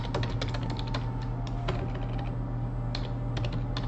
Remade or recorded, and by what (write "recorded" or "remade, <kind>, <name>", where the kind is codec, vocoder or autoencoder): recorded